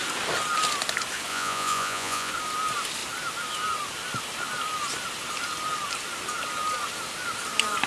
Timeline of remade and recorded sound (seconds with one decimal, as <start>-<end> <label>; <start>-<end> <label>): 0.0-1.3 recorded; 1.3-2.3 remade; 2.3-7.9 recorded

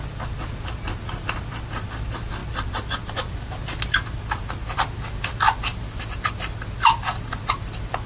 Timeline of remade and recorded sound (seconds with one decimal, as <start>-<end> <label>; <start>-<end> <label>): 0.0-8.1 recorded

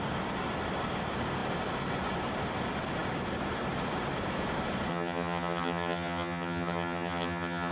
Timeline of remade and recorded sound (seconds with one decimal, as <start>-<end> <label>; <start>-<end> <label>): 0.0-4.9 recorded; 4.9-7.7 remade